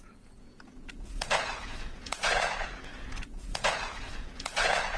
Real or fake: fake